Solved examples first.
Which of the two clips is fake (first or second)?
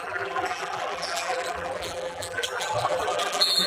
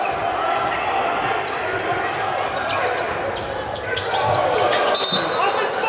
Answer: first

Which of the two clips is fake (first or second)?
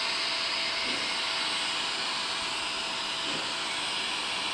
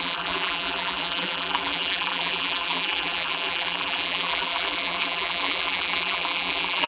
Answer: second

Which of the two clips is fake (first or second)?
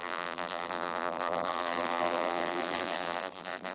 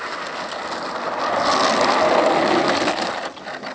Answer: first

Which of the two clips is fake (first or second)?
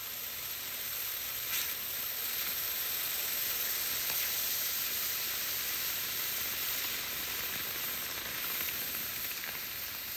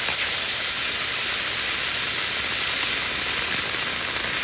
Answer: first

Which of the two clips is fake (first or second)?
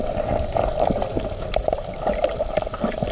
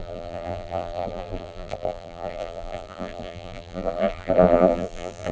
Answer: second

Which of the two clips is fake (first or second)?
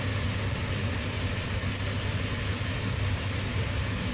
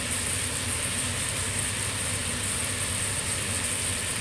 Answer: second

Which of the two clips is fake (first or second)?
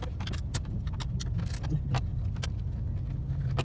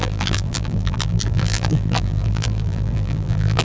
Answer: second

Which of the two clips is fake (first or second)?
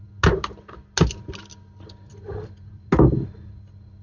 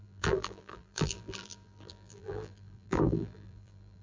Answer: second